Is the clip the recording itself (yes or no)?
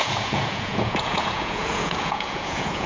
no